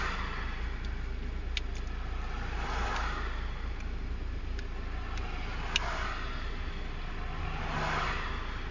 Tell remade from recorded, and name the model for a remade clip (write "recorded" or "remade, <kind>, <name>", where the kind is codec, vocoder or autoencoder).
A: recorded